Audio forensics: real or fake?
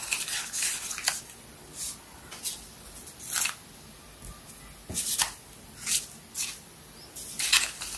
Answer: real